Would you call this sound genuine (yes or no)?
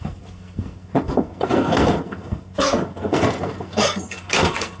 no